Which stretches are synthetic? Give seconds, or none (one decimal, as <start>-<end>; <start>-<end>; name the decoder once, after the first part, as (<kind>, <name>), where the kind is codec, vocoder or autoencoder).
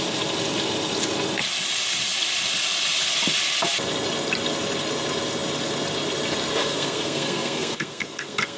6.6-8.6 (codec, SNAC)